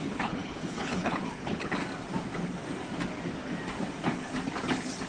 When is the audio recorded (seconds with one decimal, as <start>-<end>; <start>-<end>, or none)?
1.8-5.1